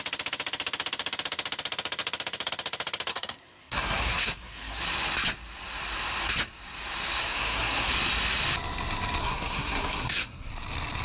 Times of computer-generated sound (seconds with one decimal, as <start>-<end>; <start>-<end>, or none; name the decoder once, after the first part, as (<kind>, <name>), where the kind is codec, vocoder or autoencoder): 3.1-4.8 (codec, SNAC); 7.2-7.9; 9.2-10.5